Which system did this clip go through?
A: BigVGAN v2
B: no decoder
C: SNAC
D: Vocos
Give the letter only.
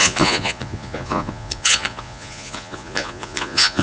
D